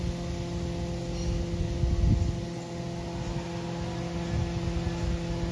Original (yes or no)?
yes